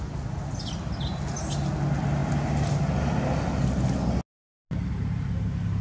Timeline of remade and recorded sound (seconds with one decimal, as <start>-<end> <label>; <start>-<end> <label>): 0.0-5.8 recorded